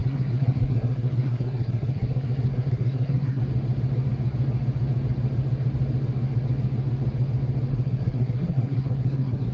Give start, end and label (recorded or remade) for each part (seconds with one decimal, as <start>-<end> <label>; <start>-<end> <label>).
0.0-3.4 remade; 3.4-7.7 recorded; 7.7-9.5 remade